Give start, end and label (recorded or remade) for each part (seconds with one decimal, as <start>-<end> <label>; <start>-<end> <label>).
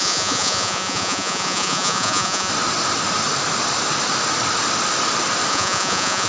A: 0.0-2.5 remade; 2.5-5.5 recorded; 5.5-6.3 remade